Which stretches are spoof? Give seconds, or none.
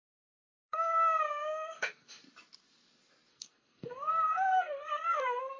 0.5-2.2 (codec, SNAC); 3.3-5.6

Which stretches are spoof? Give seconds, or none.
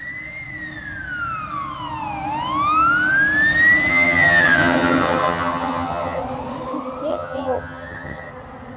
3.9-6.2 (vocoder, HiFi-GAN); 7.1-8.3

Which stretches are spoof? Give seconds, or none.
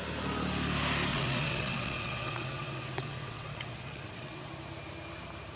1.1-4.5 (vocoder, WaveNeXt)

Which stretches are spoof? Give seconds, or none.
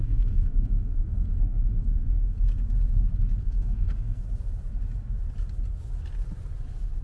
0.0-2.4 (codec, SNAC); 3.4-4.2